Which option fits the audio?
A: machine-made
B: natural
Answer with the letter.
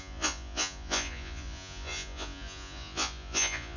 A